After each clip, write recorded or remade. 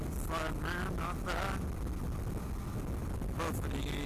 recorded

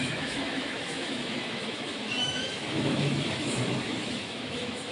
remade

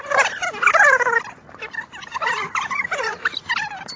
recorded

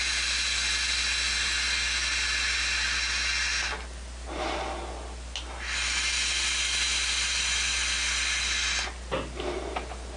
recorded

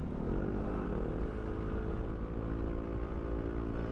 recorded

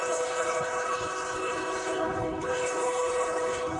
remade